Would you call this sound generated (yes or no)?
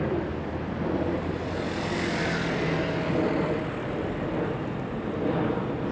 no